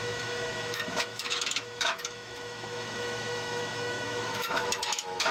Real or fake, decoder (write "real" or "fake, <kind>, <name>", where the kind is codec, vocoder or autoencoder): fake, autoencoder, DAC-VAE